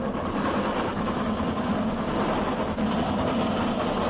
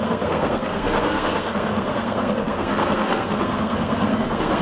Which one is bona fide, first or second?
first